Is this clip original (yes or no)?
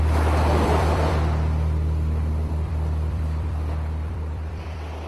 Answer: no